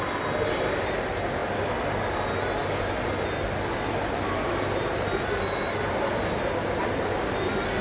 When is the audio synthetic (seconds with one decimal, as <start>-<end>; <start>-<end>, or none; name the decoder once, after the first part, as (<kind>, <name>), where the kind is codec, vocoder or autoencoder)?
none